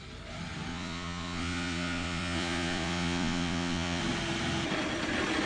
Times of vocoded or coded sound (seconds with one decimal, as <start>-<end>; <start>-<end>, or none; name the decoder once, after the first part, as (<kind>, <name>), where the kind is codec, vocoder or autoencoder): 0.7-4.0 (vocoder, Vocos)